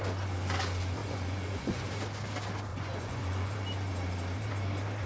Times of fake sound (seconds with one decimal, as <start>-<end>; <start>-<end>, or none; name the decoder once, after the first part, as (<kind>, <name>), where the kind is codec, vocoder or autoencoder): 1.0-1.9 (vocoder, Vocos); 2.7-3.5